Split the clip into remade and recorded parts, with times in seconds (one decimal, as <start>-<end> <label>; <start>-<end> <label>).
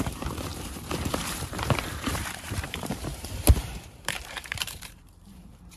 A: 0.0-5.8 remade